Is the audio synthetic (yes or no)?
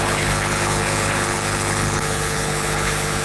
yes